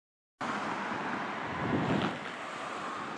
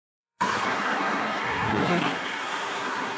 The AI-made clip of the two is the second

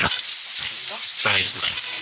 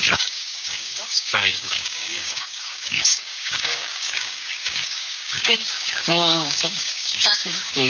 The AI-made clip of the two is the second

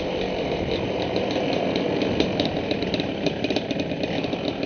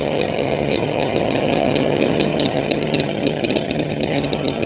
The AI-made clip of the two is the second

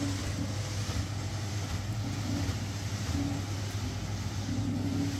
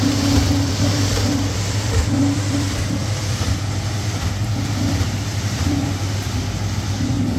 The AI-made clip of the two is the second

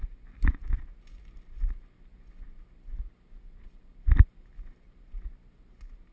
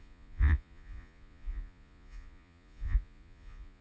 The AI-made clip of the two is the second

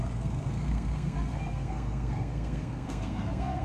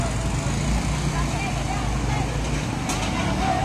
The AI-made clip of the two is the first